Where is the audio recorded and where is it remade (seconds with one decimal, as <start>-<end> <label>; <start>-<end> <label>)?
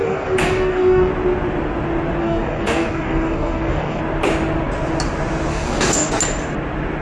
0.0-1.1 remade; 1.1-2.2 recorded; 2.2-4.0 remade; 4.0-5.5 recorded; 5.5-6.1 remade; 6.1-7.0 recorded